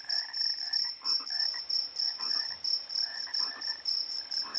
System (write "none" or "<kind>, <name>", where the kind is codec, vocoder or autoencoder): vocoder, BigVGAN v2